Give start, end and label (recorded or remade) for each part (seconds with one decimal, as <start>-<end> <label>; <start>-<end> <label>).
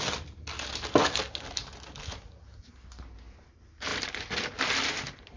0.0-5.4 recorded